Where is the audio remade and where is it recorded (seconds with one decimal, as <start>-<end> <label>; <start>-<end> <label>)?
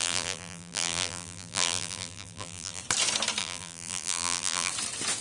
0.0-2.8 remade; 2.8-3.4 recorded; 3.4-4.7 remade; 4.7-5.2 recorded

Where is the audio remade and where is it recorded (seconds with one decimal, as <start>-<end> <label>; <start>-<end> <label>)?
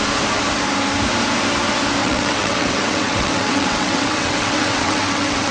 0.0-2.0 recorded; 2.0-5.5 remade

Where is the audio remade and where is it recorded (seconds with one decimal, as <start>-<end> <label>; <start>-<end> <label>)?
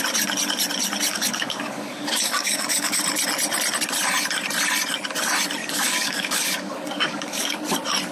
0.0-1.1 recorded; 1.1-3.0 remade; 3.0-5.6 recorded; 5.6-7.6 remade; 7.6-8.1 recorded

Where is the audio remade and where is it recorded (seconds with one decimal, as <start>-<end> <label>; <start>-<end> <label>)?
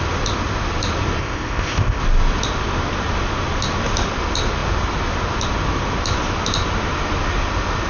0.0-1.2 recorded; 1.2-2.0 remade; 2.0-7.9 recorded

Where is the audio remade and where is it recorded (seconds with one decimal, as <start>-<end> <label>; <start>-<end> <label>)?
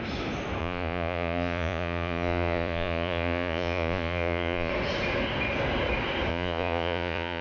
0.0-0.6 recorded; 0.6-4.7 remade; 4.7-6.3 recorded; 6.3-7.4 remade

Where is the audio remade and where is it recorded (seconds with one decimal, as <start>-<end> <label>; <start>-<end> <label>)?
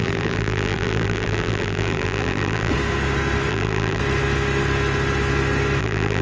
0.0-2.7 remade; 2.7-3.5 recorded; 3.5-4.0 remade; 4.0-5.8 recorded; 5.8-6.2 remade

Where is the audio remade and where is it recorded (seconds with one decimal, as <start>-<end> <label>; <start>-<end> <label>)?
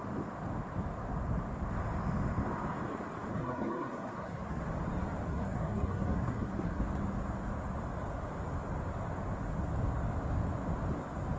0.0-3.3 recorded; 3.3-4.6 remade; 4.6-5.3 recorded; 5.3-6.8 remade; 6.8-11.4 recorded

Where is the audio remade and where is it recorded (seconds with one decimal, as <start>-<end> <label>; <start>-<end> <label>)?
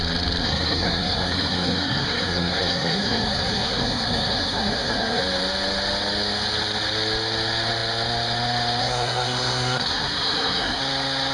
0.0-0.4 recorded; 0.4-5.2 remade; 5.2-8.8 recorded; 8.8-10.8 remade; 10.8-11.3 recorded